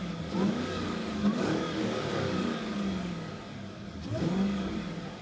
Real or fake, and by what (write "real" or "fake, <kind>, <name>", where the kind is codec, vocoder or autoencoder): fake, codec, DAC